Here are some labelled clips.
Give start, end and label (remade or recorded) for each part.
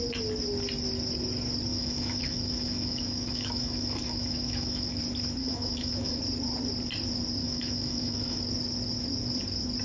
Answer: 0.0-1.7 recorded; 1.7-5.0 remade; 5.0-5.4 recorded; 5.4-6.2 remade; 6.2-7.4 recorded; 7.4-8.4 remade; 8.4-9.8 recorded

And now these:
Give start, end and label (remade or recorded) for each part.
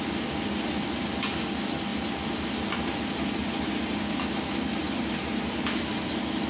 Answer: 0.0-6.5 recorded